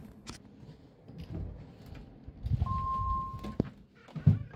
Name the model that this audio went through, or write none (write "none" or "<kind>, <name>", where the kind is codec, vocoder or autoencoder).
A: none